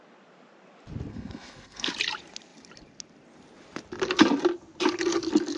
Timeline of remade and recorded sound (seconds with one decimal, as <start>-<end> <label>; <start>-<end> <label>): 0.0-1.1 recorded; 1.1-1.9 remade; 1.9-5.6 recorded